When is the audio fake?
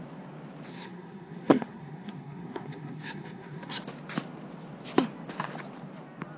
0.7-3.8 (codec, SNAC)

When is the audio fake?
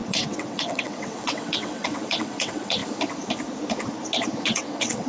0.0-2.8 (vocoder, WaveNeXt); 4.4-5.1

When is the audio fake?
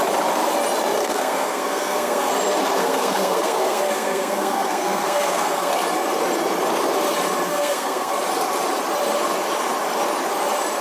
1.0-2.3 (codec, SNAC); 2.8-5.7; 7.5-8.1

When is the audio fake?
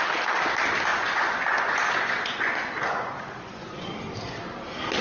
0.9-3.9 (vocoder, Vocos)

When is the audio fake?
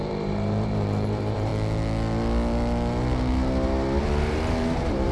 0.0-1.5 (vocoder, BigVGAN v2); 4.0-5.1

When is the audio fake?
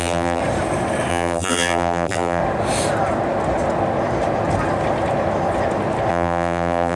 0.0-0.4 (vocoder, BigVGAN v2); 1.1-2.4; 6.1-7.0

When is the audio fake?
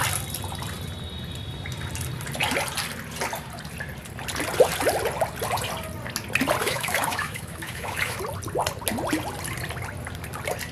6.6-8.2 (autoencoder, DAC-VAE)